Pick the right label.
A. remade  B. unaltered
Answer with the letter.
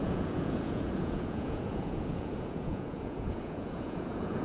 A